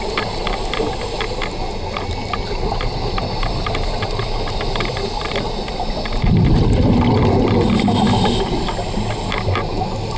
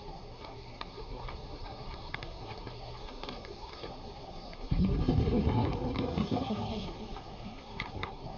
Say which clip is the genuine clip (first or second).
first